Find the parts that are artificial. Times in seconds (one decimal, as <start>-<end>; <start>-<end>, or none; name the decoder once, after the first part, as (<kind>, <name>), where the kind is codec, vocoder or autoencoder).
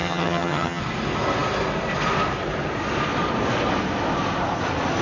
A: 0.0-0.8 (vocoder, HiFi-GAN)